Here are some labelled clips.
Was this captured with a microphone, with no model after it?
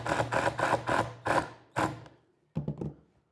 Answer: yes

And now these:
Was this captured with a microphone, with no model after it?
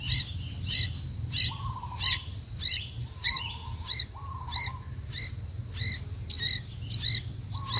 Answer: yes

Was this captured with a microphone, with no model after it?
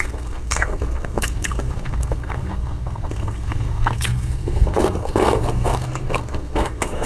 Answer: no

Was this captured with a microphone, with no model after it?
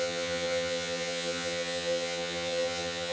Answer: no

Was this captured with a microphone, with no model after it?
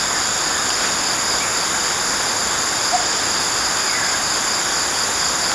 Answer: yes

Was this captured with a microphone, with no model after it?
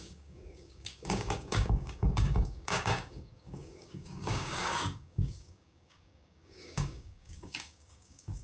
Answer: no